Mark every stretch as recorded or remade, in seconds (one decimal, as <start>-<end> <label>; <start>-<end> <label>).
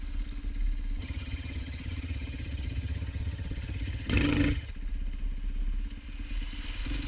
0.0-1.0 recorded; 1.0-4.7 remade; 4.7-7.1 recorded